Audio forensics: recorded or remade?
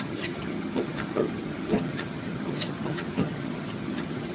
remade